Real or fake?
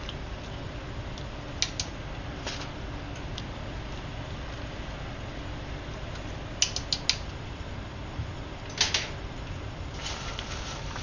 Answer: real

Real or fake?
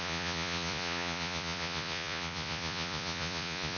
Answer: fake